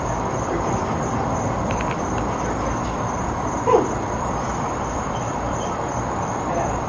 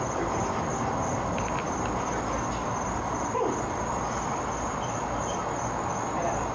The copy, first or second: first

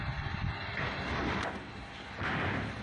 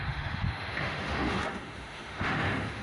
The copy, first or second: second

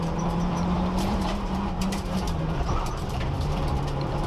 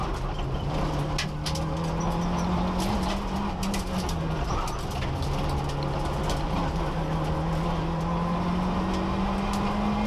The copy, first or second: first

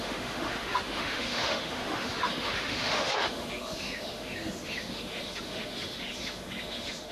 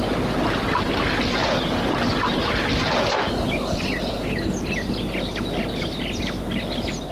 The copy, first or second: first